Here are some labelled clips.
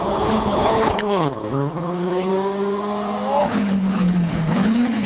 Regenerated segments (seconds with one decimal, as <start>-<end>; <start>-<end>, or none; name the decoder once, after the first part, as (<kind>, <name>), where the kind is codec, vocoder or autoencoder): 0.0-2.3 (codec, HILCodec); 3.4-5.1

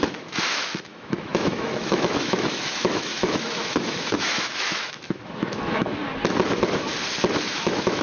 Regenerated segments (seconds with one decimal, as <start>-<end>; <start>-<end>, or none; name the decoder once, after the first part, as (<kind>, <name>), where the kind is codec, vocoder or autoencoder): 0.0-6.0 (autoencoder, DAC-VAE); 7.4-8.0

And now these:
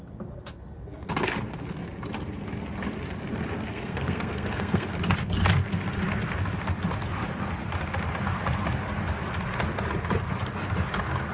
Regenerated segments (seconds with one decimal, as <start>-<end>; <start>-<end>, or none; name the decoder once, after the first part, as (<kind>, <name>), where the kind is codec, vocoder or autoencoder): 3.7-4.9 (codec, SNAC)